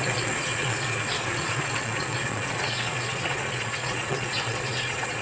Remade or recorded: remade